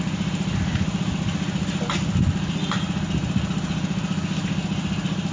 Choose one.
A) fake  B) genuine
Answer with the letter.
B